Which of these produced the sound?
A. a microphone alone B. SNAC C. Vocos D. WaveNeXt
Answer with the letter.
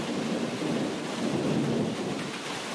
A